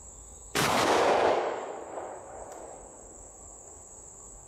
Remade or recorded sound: remade